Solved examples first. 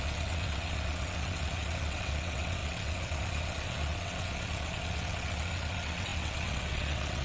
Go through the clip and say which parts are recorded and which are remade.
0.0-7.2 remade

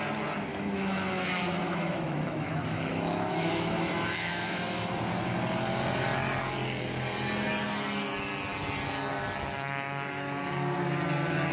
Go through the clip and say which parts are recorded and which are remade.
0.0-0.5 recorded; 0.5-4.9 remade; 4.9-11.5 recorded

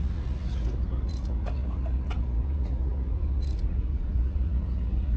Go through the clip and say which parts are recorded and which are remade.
0.0-5.2 remade

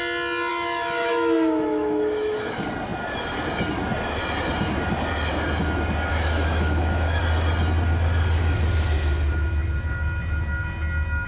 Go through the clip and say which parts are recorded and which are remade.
0.0-0.5 recorded; 0.5-2.5 remade; 2.5-6.1 recorded; 6.1-7.2 remade; 7.2-11.3 recorded

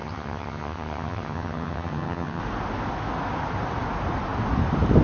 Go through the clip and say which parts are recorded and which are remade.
0.0-2.4 remade; 2.4-5.0 recorded

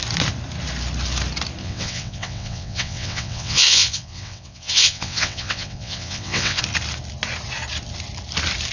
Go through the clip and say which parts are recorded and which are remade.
0.0-1.6 recorded; 1.6-6.6 remade; 6.6-8.7 recorded

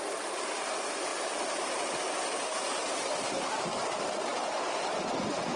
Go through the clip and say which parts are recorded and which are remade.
0.0-5.6 recorded

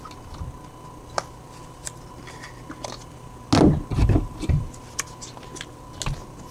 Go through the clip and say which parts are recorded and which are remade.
0.0-3.9 recorded; 3.9-4.5 remade; 4.5-6.5 recorded